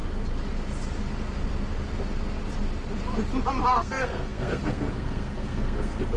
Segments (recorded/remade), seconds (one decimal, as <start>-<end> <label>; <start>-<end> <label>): 0.0-3.7 recorded; 3.7-6.2 remade